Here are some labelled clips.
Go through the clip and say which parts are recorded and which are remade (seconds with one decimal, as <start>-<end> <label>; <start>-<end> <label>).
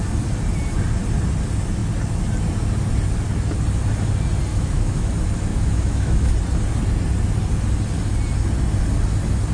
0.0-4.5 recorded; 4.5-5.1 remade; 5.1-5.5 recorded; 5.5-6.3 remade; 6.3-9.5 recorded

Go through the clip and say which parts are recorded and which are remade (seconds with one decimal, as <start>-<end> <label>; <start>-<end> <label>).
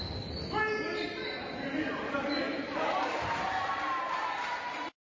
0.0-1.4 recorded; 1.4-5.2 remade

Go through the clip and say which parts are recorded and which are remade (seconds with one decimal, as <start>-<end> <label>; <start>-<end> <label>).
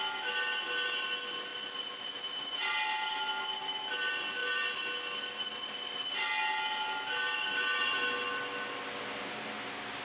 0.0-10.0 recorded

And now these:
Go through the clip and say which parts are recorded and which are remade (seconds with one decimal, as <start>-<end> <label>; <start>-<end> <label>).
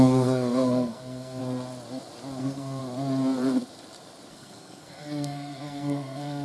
0.0-1.4 remade; 1.4-2.4 recorded; 2.4-2.8 remade; 2.8-4.3 recorded; 4.3-6.4 remade